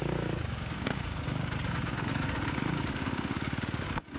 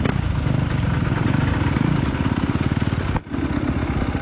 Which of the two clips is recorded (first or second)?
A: second